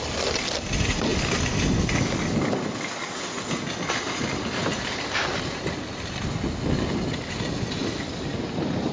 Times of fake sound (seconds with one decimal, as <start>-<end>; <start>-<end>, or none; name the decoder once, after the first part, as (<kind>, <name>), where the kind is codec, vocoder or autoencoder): 0.0-1.1 (vocoder, BigVGAN v2); 3.9-4.6; 6.7-8.9